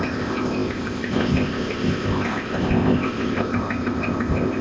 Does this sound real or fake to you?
fake